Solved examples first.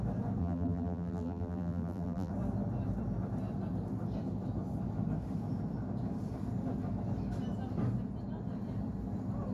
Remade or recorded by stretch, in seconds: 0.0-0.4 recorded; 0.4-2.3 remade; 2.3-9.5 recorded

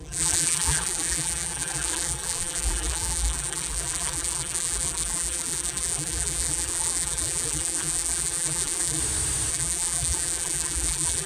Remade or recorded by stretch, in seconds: 0.0-9.0 remade; 9.0-9.5 recorded; 9.5-11.3 remade

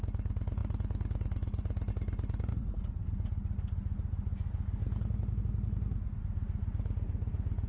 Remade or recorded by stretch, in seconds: 0.0-7.7 recorded

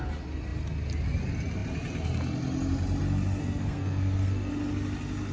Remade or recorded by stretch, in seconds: 0.0-3.4 recorded; 3.4-4.5 remade; 4.5-5.3 recorded

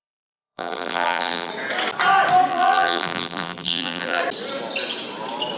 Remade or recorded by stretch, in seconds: 0.0-1.5 remade; 1.5-2.5 recorded; 2.5-4.2 remade; 4.2-5.6 recorded

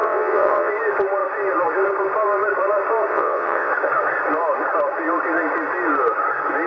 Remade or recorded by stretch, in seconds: 0.0-0.7 remade; 0.7-3.1 recorded; 3.1-3.7 remade; 3.7-6.7 recorded

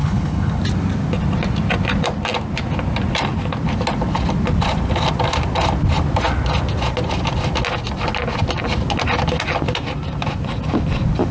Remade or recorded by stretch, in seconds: 0.0-0.6 remade; 0.6-11.3 recorded

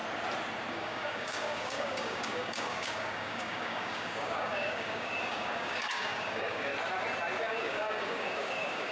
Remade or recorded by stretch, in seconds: 0.0-0.7 recorded; 0.7-6.7 remade; 6.7-7.4 recorded; 7.4-8.9 remade